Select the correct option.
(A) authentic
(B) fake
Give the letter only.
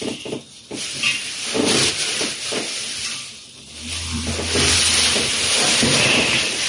A